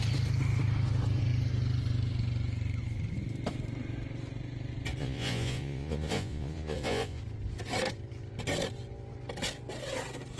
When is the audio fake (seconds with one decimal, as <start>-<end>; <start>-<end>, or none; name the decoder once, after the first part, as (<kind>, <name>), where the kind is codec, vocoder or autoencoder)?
5.0-7.2 (vocoder, Vocos)